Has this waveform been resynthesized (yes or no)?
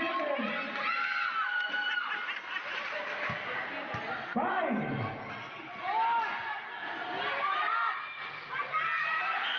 no